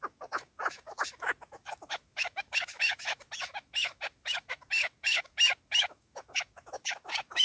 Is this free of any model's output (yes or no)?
no